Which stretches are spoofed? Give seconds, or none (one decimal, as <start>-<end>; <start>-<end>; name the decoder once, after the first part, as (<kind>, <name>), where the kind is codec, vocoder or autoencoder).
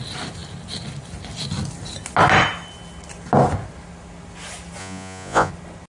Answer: 4.8-5.5 (vocoder, Vocos)